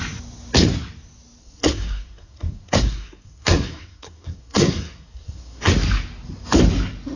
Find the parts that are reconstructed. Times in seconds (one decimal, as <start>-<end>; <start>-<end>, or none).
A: 1.4-5.7